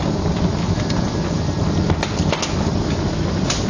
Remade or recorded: recorded